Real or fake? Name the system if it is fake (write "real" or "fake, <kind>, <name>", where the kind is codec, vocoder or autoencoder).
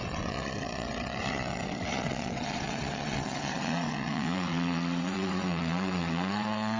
fake, vocoder, WaveNeXt